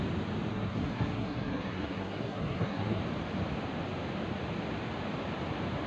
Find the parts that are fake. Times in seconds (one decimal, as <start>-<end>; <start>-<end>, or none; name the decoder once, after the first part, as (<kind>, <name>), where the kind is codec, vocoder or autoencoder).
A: 0.5-3.0 (codec, SNAC)